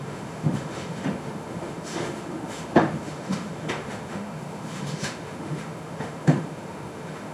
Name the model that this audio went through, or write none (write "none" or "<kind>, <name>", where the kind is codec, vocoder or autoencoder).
autoencoder, DAC-VAE